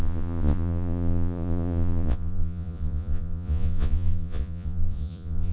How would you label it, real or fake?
fake